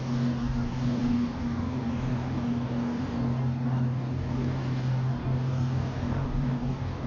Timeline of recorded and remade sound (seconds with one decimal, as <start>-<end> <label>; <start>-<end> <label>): 0.0-7.1 remade